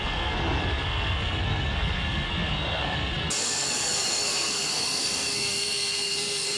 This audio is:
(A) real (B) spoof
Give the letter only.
B